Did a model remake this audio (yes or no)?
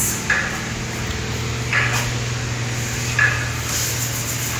no